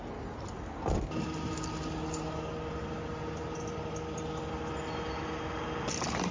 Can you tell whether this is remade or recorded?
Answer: recorded